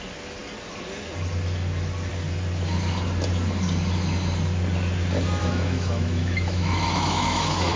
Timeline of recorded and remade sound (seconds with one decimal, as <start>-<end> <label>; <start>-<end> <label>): 0.0-5.4 recorded; 5.4-7.8 remade